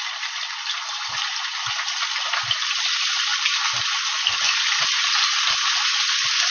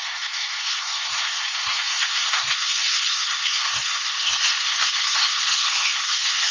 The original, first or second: first